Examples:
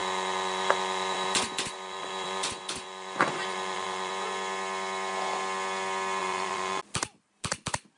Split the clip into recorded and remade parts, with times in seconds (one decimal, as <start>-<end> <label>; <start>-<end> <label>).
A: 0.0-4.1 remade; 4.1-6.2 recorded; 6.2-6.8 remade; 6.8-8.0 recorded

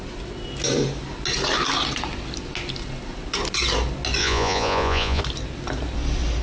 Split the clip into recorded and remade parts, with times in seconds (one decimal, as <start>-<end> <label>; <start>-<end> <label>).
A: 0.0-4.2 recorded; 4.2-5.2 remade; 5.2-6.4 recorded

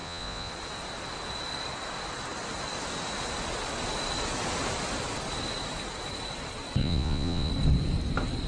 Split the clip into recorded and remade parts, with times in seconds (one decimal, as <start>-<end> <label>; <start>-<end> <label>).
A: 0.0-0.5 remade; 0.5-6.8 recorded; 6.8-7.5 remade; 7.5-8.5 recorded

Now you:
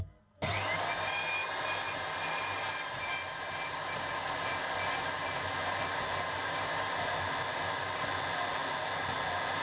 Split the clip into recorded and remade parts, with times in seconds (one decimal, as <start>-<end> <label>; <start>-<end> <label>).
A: 0.0-9.6 recorded

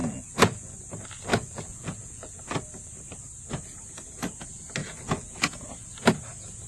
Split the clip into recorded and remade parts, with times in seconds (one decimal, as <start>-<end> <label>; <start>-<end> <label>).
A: 0.0-0.7 remade; 0.7-1.3 recorded; 1.3-2.4 remade; 2.4-4.8 recorded; 4.8-5.6 remade; 5.6-6.7 recorded